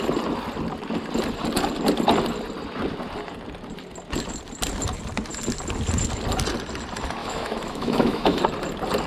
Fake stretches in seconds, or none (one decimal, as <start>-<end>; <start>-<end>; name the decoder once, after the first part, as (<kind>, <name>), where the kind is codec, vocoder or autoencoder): 7.2-8.4 (autoencoder, DAC-VAE)